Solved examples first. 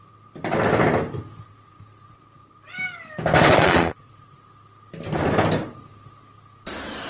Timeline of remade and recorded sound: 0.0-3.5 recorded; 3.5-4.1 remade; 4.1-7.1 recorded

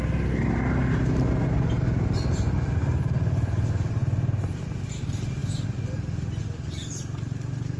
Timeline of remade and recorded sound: 0.0-7.8 recorded

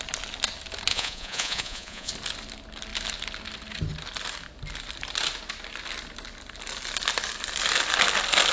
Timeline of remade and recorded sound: 0.0-0.9 recorded; 0.9-2.1 remade; 2.1-8.5 recorded

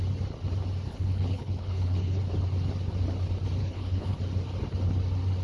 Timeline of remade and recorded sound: 0.0-0.9 recorded; 0.9-2.2 remade; 2.2-3.6 recorded; 3.6-4.2 remade; 4.2-5.4 recorded